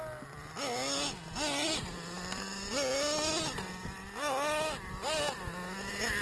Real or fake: real